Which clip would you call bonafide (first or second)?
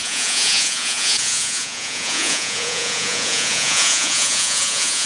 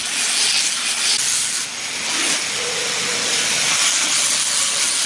second